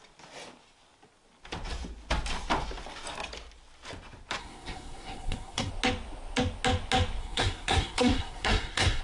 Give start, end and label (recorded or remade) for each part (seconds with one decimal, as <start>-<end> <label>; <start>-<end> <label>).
0.0-4.4 recorded; 4.4-5.7 remade; 5.7-7.2 recorded; 7.2-9.0 remade